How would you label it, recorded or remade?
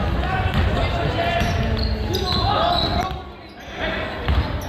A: recorded